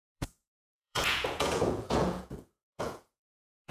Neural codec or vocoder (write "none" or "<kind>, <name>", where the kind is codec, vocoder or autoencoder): vocoder, Vocos